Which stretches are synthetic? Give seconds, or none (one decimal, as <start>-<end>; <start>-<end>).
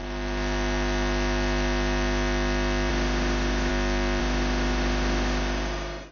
2.9-3.7; 4.2-6.1